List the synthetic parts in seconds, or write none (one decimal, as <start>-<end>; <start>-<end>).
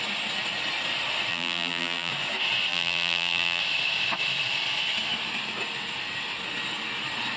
1.3-2.1; 2.7-3.6